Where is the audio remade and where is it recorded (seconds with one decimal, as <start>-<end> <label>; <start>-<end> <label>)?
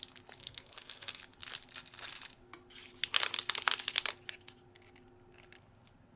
0.0-0.4 recorded; 0.4-1.2 remade; 1.2-6.2 recorded